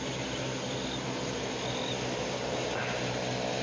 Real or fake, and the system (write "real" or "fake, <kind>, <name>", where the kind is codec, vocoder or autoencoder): real